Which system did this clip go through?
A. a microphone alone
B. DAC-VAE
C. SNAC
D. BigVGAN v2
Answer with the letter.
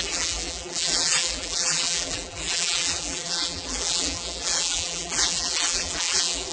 D